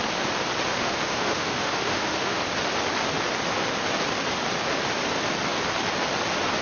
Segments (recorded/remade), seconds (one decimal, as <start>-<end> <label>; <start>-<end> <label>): 0.0-0.7 recorded; 0.7-2.4 remade; 2.4-6.6 recorded